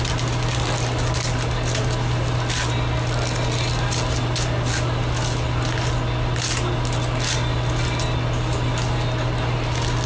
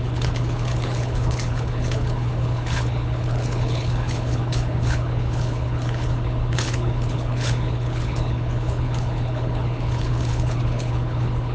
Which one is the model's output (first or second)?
second